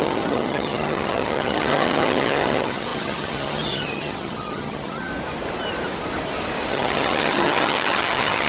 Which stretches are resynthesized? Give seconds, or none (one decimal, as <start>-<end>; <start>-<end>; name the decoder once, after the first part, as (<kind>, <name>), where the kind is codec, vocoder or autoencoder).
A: 0.0-5.1 (vocoder, HiFi-GAN); 6.7-8.5